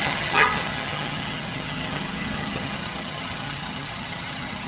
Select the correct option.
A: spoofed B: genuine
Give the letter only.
A